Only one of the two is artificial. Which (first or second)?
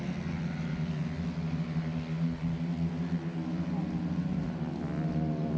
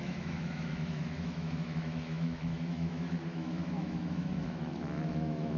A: second